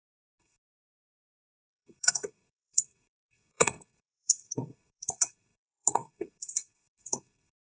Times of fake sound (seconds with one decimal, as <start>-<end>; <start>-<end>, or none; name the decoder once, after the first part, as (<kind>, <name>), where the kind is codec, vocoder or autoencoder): 0.0-7.7 (codec, SNAC)